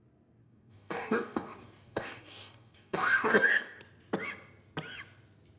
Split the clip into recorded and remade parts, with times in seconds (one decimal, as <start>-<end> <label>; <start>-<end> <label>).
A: 0.0-0.4 recorded; 0.4-3.8 remade; 3.8-5.6 recorded